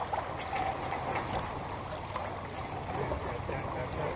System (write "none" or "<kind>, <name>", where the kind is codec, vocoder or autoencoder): none